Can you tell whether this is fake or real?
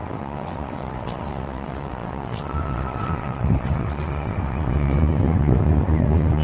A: fake